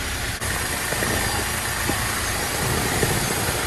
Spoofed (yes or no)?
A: no